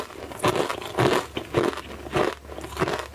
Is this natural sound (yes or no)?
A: yes